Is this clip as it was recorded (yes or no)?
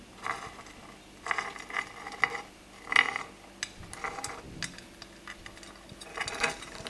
yes